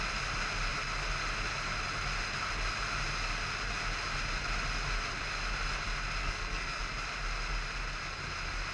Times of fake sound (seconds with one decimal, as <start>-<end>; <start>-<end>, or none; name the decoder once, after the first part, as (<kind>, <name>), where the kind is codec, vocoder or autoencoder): 6.2-6.8 (codec, SNAC)